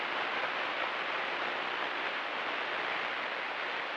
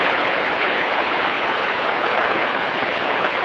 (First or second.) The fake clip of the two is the second